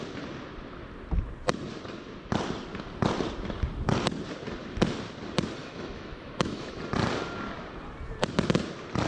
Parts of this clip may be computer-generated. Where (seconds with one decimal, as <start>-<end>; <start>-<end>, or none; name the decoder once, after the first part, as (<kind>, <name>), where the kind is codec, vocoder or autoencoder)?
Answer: 5.6-6.8 (autoencoder, DAC-VAE)